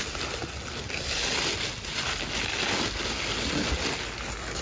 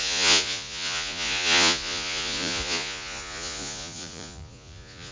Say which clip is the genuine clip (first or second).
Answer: first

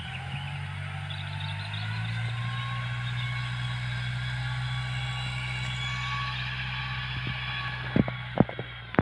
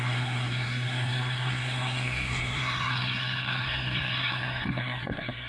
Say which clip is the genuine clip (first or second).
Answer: first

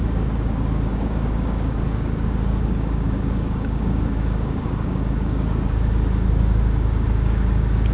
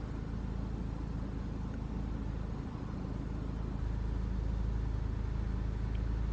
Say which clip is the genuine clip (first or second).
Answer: second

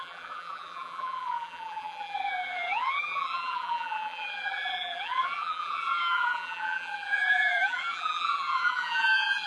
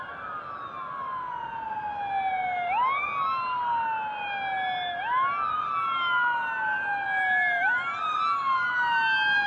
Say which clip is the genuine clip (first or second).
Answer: second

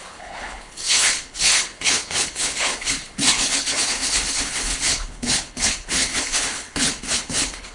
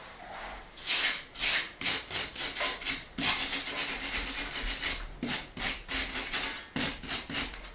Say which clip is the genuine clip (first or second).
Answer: second